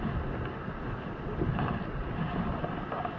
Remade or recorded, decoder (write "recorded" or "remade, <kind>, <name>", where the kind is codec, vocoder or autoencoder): recorded